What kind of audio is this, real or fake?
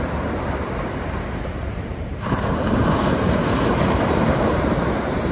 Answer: fake